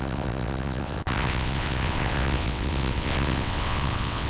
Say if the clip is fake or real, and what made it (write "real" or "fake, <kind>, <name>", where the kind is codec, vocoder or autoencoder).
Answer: fake, vocoder, WaveNeXt